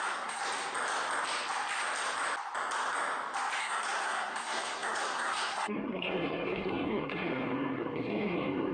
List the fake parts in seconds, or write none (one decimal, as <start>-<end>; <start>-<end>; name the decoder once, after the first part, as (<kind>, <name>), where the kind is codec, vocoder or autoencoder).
0.0-0.4 (codec, SNAC); 3.6-8.7